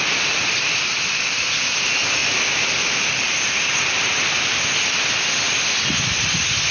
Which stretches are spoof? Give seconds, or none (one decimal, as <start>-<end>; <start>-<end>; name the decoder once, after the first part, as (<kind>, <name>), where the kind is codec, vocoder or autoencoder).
none

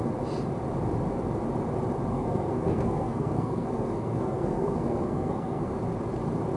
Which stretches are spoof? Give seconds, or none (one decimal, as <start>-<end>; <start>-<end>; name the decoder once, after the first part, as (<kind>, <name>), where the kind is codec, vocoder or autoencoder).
2.1-5.8 (codec, SNAC)

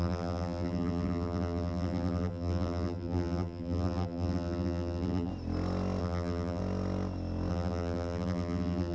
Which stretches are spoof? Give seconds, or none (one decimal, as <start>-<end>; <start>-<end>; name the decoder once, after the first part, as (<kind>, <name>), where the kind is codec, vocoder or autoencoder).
0.0-5.3 (vocoder, BigVGAN v2); 6.0-6.6; 7.5-8.9

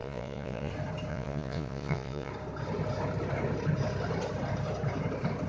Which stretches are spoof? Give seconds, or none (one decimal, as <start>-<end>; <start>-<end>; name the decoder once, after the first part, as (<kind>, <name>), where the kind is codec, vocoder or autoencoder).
0.0-0.7 (vocoder, Vocos); 1.1-2.3

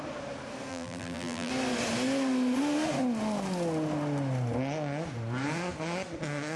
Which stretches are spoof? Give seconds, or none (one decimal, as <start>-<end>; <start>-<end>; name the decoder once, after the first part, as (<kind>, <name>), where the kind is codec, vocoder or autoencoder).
0.7-1.5 (vocoder, BigVGAN v2)

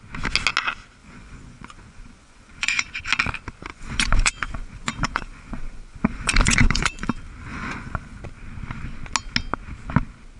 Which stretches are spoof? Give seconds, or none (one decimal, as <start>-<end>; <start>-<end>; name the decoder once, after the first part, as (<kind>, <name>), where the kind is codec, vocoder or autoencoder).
1.0-3.0 (vocoder, Vocos); 3.7-7.1; 7.5-8.2